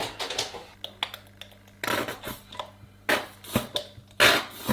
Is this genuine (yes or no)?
yes